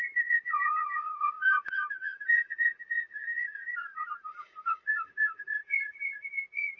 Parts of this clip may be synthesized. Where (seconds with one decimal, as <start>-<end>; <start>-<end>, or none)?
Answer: 0.0-6.8